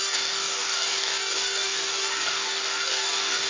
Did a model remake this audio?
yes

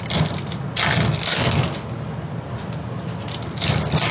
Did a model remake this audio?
no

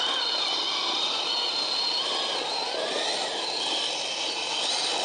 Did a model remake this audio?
no